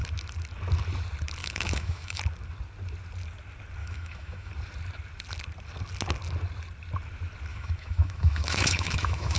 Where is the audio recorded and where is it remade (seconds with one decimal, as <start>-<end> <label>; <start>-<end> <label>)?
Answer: 0.0-1.4 recorded; 1.4-2.2 remade; 2.2-3.8 recorded; 3.8-4.5 remade; 4.5-7.5 recorded; 7.5-9.4 remade